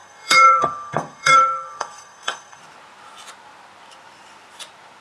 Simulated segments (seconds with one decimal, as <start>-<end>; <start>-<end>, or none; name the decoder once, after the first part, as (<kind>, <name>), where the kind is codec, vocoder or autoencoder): 0.0-2.6 (codec, SNAC)